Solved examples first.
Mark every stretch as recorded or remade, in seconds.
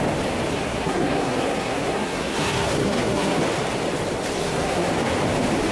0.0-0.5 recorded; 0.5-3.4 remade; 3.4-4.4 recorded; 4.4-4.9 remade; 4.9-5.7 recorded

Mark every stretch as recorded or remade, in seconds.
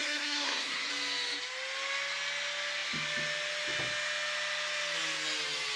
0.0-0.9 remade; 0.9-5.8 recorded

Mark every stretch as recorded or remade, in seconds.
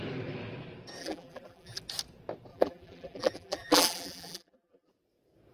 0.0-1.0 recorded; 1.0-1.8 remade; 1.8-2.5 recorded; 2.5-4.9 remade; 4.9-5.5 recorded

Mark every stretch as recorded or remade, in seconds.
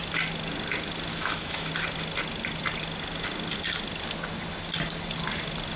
0.0-1.1 recorded; 1.1-1.7 remade; 1.7-5.8 recorded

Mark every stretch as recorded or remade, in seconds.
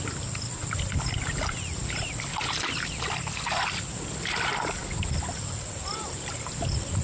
0.0-7.0 recorded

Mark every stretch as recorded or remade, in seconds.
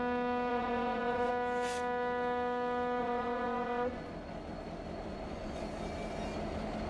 0.0-0.5 recorded; 0.5-1.3 remade; 1.3-3.0 recorded; 3.0-4.1 remade; 4.1-5.1 recorded; 5.1-5.6 remade; 5.6-6.9 recorded